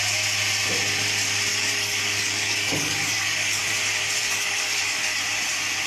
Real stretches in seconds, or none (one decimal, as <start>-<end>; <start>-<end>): 0.0-1.5; 3.6-4.2; 5.2-5.9